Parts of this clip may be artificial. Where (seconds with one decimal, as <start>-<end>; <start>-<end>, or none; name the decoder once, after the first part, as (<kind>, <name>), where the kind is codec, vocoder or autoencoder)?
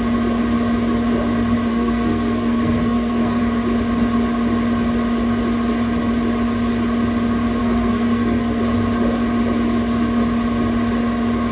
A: 1.7-3.4 (codec, SNAC); 7.6-8.6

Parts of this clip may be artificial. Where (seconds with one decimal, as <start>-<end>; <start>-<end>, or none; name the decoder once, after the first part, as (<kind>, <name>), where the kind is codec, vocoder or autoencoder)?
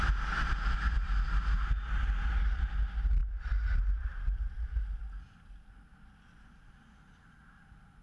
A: none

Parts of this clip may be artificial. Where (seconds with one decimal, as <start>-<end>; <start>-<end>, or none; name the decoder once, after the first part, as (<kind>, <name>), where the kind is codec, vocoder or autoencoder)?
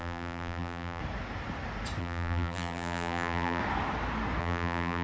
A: 0.0-1.0 (vocoder, BigVGAN v2); 2.0-3.6; 4.4-5.0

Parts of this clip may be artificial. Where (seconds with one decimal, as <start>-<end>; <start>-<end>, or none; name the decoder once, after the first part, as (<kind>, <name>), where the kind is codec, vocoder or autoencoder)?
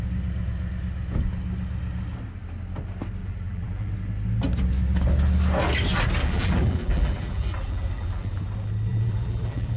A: 3.2-3.9 (vocoder, BigVGAN v2); 6.2-8.4; 8.9-9.8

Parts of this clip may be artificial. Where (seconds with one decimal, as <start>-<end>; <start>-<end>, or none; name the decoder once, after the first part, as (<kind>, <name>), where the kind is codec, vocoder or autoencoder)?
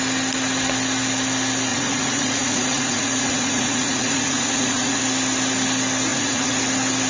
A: 1.7-5.0 (vocoder, Vocos); 6.1-6.6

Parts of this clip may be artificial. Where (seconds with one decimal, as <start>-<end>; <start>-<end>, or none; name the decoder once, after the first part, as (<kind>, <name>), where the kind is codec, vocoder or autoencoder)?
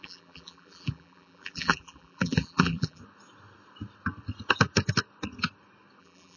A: 0.0-3.0 (vocoder, BigVGAN v2); 6.0-6.4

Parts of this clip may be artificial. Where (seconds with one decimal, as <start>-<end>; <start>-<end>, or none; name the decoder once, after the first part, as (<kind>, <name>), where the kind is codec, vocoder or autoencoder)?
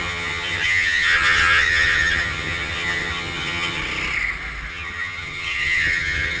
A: 0.0-3.8 (vocoder, HiFi-GAN); 4.7-6.4